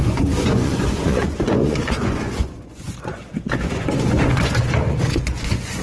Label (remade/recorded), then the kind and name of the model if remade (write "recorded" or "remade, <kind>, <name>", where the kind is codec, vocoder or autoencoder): remade, vocoder, Vocos